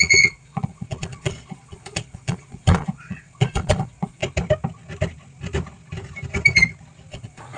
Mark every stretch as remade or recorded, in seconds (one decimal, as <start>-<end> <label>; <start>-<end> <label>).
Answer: 0.0-4.2 remade; 4.2-7.1 recorded; 7.1-7.6 remade